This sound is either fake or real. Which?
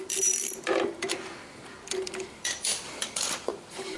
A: fake